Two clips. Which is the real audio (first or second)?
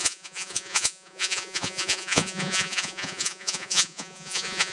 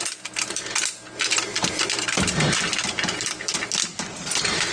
second